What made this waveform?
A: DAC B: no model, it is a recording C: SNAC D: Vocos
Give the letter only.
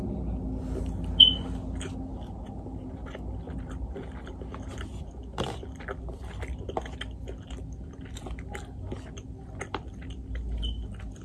B